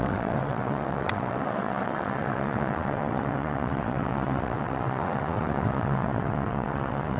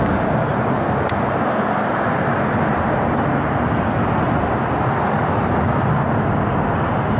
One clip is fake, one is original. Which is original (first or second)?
second